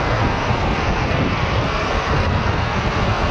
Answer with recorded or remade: remade